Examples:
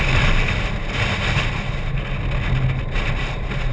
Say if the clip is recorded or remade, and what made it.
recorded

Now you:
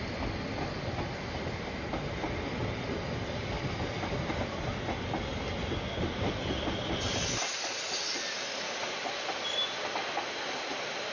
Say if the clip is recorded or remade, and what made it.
recorded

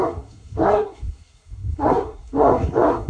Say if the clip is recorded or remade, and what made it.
remade, codec, SNAC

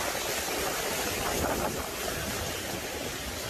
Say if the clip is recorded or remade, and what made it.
recorded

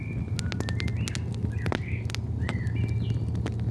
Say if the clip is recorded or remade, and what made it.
recorded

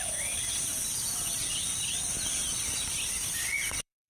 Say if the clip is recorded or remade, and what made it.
remade, vocoder, BigVGAN v2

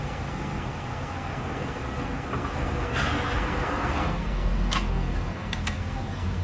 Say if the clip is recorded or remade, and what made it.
remade, codec, SNAC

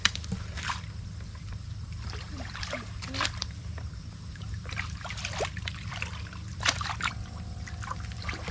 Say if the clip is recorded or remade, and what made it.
remade, vocoder, BigVGAN v2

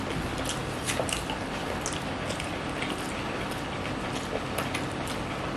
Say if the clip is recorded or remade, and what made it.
recorded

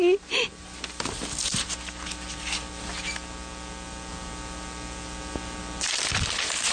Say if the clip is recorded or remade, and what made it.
recorded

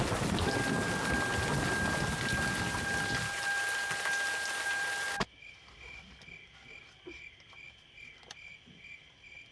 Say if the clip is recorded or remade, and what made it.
recorded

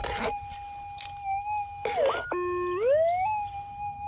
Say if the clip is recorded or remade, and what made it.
recorded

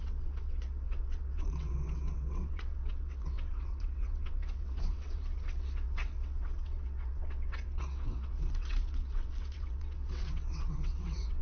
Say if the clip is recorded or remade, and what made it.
remade, vocoder, WaveNeXt